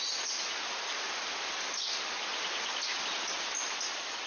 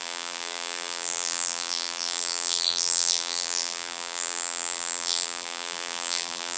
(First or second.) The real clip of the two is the first